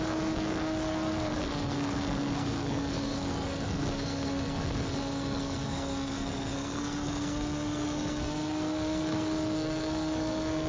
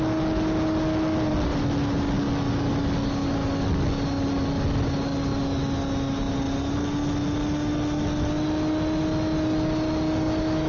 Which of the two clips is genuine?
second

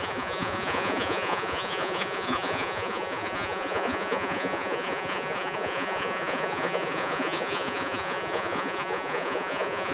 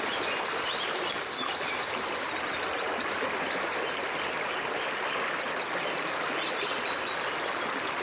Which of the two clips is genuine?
second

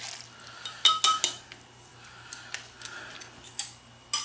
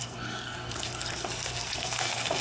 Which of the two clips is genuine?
first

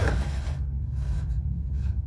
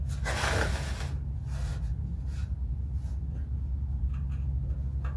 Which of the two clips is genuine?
second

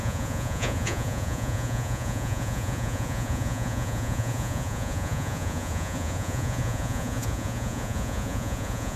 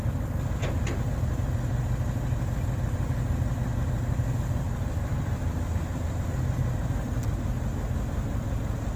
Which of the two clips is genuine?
second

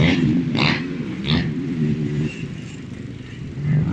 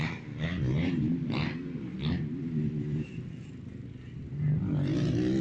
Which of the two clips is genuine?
second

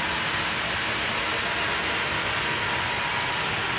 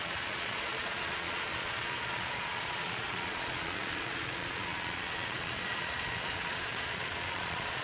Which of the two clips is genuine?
first